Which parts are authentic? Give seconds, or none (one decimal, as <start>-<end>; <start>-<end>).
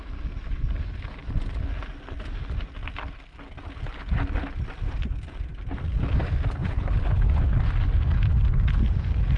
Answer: 0.0-6.6; 7.3-9.4